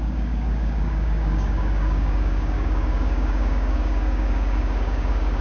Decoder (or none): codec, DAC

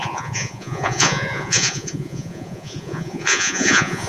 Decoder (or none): vocoder, Vocos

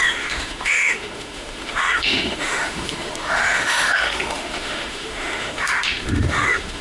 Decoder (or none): autoencoder, DAC-VAE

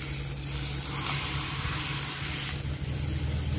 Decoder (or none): none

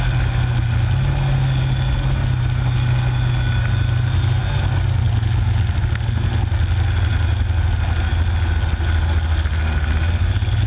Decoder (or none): none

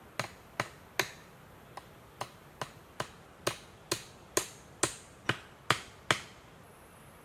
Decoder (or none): none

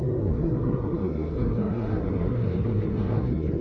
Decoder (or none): codec, SNAC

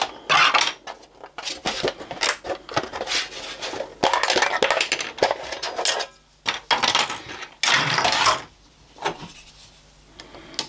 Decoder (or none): none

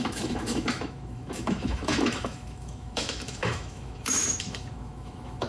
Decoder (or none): autoencoder, DAC-VAE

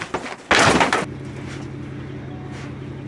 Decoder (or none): none